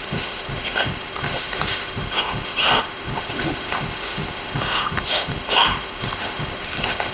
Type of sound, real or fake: fake